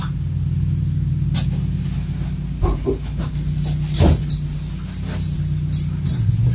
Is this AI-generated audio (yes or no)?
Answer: no